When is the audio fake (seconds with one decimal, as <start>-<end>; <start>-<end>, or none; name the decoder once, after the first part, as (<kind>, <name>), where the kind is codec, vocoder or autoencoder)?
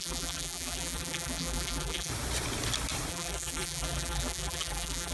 0.0-2.1 (vocoder, BigVGAN v2); 3.1-5.1